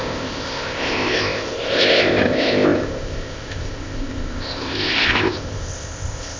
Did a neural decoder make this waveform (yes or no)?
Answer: yes